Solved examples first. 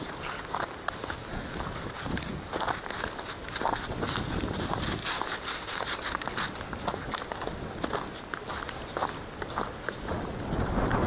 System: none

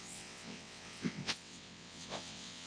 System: vocoder, WaveNeXt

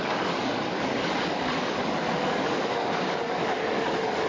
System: codec, DAC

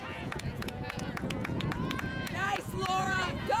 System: vocoder, Vocos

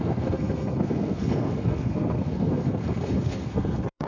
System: codec, SNAC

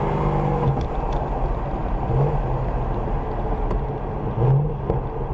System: none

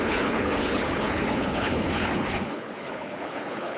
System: codec, HILCodec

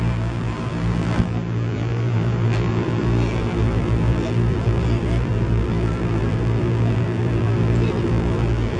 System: vocoder, BigVGAN v2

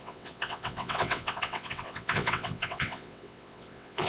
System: vocoder, WaveNeXt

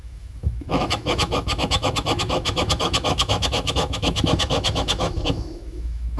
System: autoencoder, DAC-VAE